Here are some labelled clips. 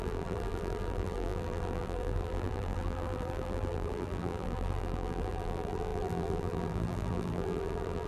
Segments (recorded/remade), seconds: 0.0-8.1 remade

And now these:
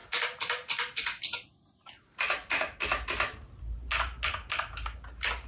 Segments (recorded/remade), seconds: 0.0-5.5 recorded

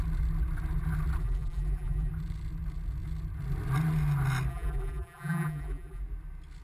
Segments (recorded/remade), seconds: 0.0-1.2 recorded; 1.2-2.1 remade; 2.1-4.5 recorded; 4.5-6.0 remade; 6.0-6.6 recorded